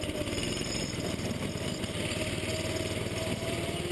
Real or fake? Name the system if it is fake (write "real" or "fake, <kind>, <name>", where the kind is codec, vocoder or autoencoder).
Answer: real